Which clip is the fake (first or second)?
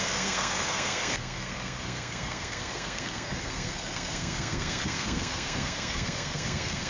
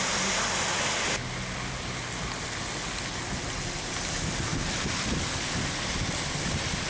first